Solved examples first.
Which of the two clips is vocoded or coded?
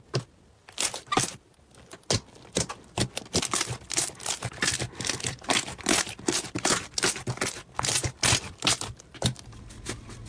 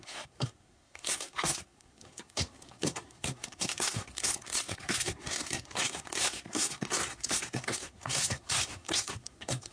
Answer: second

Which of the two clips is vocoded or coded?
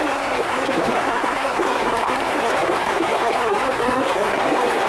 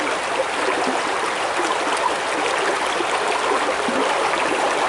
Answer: first